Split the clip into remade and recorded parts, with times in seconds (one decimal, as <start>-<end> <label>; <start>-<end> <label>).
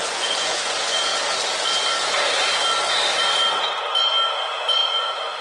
0.0-1.1 remade; 1.1-4.3 recorded; 4.3-5.4 remade